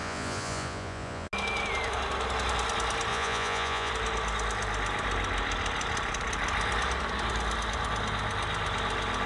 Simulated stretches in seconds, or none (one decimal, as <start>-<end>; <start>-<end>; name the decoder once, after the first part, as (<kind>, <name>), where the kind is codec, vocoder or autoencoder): 0.0-1.3 (vocoder, Vocos); 3.1-3.9